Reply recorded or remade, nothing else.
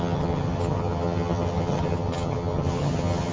remade